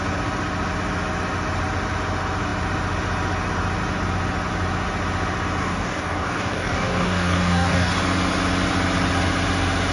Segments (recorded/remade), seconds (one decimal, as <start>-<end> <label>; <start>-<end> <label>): 0.0-5.6 recorded; 5.6-7.9 remade; 7.9-9.9 recorded

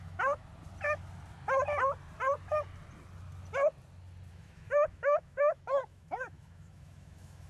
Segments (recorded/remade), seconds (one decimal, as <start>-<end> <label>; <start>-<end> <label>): 0.0-0.4 remade; 0.4-4.3 recorded; 4.3-7.5 remade

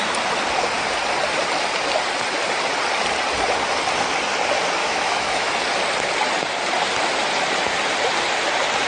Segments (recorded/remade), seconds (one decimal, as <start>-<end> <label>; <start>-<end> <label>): 0.0-4.8 recorded; 4.8-5.5 remade; 5.5-8.9 recorded

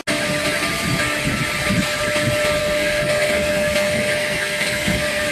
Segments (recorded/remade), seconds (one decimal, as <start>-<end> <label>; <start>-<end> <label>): 0.0-2.6 recorded; 2.6-5.3 remade

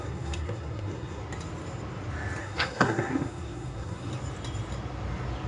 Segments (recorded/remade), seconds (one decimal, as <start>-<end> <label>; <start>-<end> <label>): 0.0-1.2 remade; 1.2-2.4 recorded; 2.4-4.1 remade; 4.1-5.5 recorded

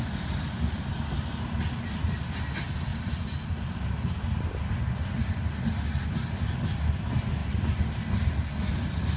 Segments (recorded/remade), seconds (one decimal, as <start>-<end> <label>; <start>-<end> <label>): 0.0-2.9 recorded; 2.9-4.7 remade; 4.7-9.2 recorded